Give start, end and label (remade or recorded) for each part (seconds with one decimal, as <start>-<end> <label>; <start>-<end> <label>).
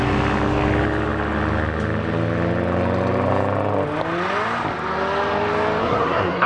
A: 0.0-5.8 recorded; 5.8-6.5 remade